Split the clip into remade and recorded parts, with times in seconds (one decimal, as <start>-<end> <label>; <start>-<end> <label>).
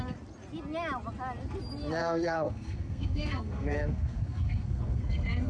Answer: 0.0-2.0 recorded; 2.0-5.5 remade